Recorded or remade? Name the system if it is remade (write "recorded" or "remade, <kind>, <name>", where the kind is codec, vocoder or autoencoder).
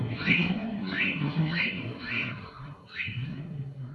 remade, codec, SNAC